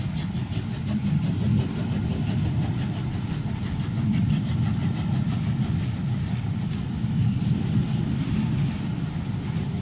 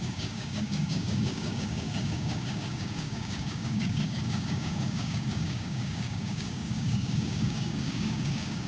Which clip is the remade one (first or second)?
second